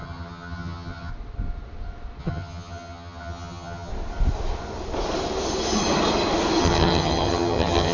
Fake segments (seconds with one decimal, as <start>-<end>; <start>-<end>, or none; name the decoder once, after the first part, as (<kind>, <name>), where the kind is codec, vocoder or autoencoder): 0.0-1.1 (vocoder, HiFi-GAN); 2.2-3.9; 6.6-7.9